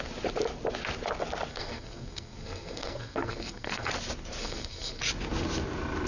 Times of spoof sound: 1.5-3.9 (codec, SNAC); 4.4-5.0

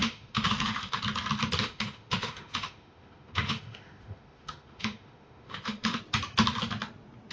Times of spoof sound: 0.0-1.0 (autoencoder, DAC-VAE); 1.6-6.0